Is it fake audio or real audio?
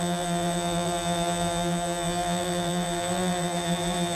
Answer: fake